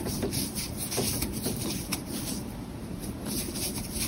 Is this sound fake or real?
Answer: fake